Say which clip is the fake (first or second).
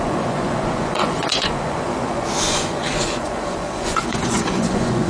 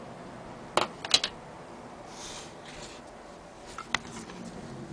first